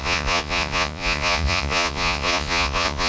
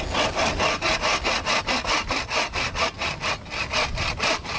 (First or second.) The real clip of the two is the second